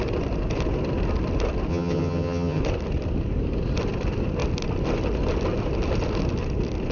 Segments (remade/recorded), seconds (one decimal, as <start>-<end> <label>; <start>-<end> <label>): 0.0-1.7 recorded; 1.7-2.6 remade; 2.6-6.9 recorded

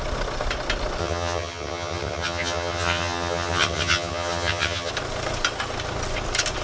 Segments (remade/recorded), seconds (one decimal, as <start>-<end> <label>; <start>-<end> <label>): 0.0-1.0 recorded; 1.0-4.9 remade; 4.9-6.6 recorded

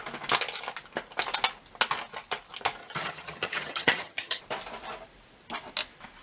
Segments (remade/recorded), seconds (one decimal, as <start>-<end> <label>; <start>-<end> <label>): 0.0-2.8 recorded; 2.8-4.4 remade; 4.4-6.2 recorded